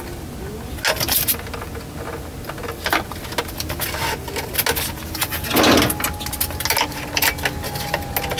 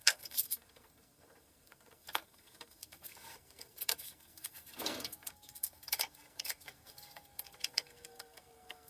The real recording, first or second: first